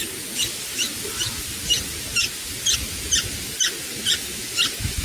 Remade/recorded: recorded